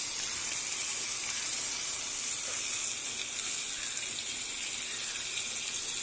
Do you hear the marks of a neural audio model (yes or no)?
no